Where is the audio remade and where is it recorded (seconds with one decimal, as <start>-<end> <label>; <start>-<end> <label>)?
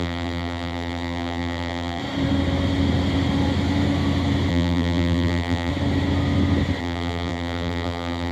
0.0-2.0 remade; 2.0-4.5 recorded; 4.5-5.7 remade; 5.7-6.8 recorded; 6.8-8.3 remade